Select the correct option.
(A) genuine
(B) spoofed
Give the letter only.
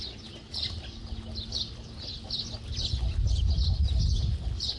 A